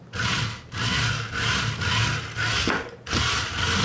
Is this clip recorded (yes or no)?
yes